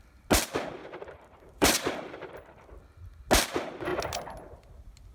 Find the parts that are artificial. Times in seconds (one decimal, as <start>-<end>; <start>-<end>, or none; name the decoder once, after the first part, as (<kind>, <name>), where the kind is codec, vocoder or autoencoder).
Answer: 0.8-2.3 (vocoder, BigVGAN v2)